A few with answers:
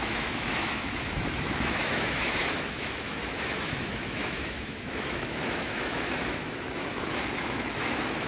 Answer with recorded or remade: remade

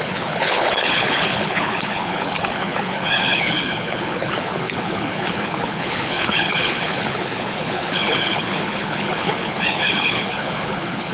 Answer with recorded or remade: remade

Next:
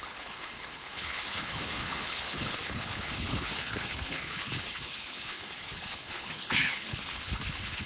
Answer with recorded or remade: remade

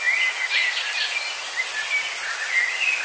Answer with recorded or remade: recorded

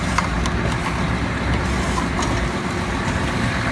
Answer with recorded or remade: recorded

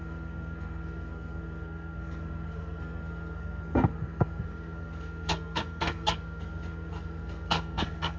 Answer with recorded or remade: remade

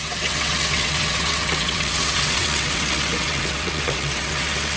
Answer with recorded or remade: remade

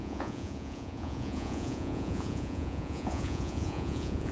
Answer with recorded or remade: remade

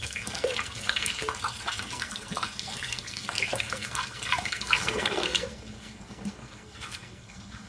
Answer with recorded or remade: remade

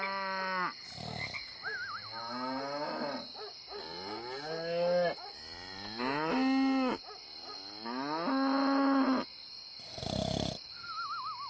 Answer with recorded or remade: recorded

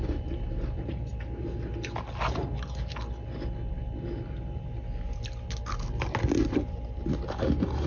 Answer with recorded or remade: recorded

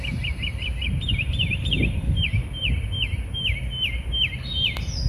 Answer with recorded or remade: recorded